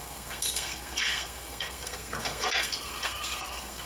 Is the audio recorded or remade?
remade